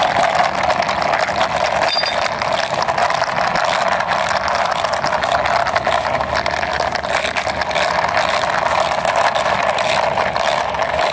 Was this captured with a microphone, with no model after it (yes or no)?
yes